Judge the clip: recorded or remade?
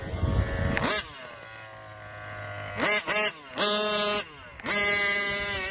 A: recorded